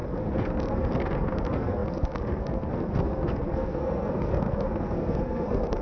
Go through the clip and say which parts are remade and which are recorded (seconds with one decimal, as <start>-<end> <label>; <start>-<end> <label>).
0.0-5.8 remade